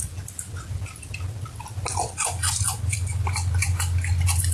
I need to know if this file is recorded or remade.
recorded